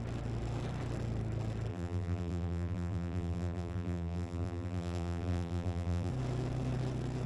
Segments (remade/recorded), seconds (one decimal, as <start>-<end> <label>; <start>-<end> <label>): 0.0-1.7 recorded; 1.7-6.1 remade; 6.1-7.3 recorded